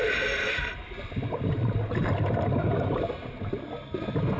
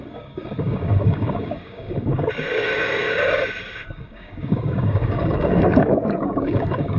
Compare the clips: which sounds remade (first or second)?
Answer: second